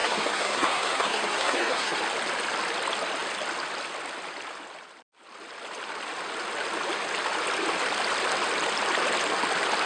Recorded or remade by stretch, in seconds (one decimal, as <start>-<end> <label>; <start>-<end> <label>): 0.0-2.0 remade; 2.0-9.9 recorded